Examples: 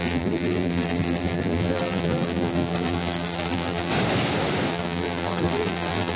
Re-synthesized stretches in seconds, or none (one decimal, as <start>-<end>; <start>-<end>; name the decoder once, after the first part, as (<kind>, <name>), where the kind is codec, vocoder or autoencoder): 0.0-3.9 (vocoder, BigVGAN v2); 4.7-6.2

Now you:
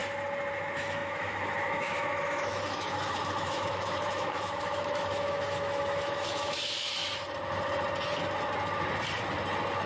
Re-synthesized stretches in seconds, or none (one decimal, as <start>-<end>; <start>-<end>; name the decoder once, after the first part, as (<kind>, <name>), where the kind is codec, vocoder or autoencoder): 0.5-7.0 (autoencoder, DAC-VAE)

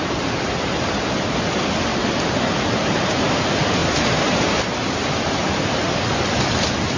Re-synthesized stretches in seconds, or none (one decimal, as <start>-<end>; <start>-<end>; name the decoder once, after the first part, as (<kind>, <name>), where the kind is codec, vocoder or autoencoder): 1.9-3.2 (vocoder, BigVGAN v2); 3.8-5.0; 5.4-5.9